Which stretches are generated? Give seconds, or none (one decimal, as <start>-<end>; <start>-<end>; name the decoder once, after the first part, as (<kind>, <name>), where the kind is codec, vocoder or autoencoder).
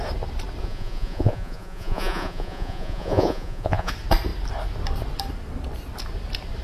0.6-3.9 (vocoder, Vocos)